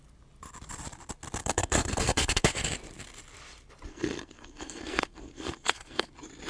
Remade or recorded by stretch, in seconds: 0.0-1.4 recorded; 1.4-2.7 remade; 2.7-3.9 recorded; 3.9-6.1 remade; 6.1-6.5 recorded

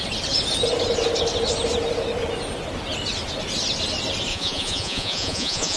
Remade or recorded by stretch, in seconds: 0.0-4.3 recorded; 4.3-5.8 remade

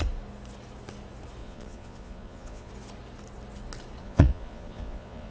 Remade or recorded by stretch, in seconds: 0.0-1.4 recorded; 1.4-2.7 remade; 2.7-4.0 recorded; 4.0-5.3 remade

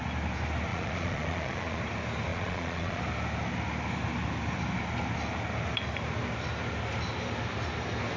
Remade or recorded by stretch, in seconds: 0.0-0.7 recorded; 0.7-1.8 remade; 1.8-2.3 recorded; 2.3-3.0 remade; 3.0-8.2 recorded